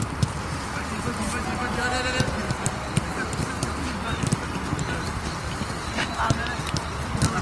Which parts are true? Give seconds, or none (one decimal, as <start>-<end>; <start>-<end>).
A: 0.0-7.4